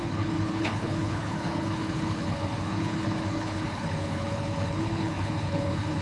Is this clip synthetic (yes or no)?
yes